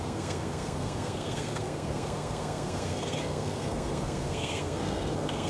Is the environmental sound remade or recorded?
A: remade